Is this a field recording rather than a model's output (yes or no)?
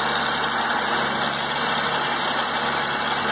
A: yes